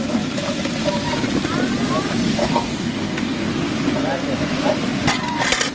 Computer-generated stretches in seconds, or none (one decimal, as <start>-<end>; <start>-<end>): 2.4-3.5